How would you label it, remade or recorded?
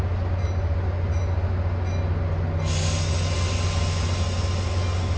recorded